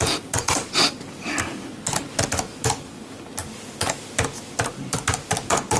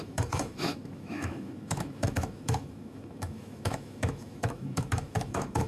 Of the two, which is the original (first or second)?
first